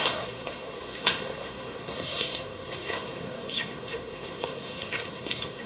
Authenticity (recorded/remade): remade